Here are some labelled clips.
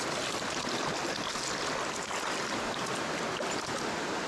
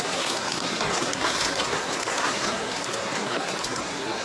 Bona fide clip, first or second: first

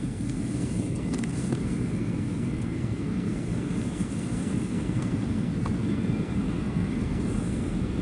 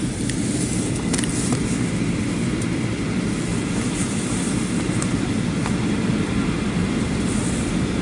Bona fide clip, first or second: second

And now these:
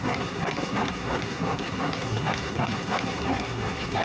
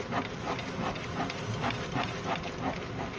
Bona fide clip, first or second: second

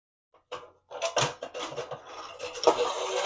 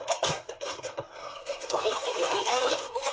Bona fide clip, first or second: first